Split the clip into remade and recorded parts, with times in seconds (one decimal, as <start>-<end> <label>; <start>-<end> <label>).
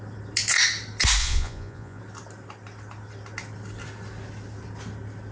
0.0-1.2 recorded; 1.2-2.0 remade; 2.0-5.3 recorded